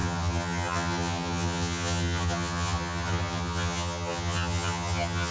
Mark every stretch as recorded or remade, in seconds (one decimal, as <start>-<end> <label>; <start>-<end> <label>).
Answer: 0.0-5.3 remade